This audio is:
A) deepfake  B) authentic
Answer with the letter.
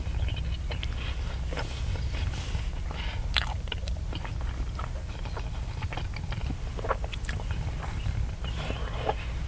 B